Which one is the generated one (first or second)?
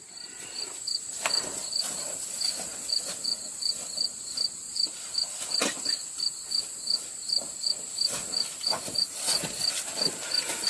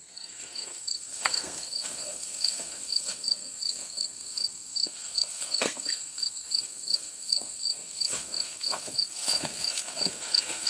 second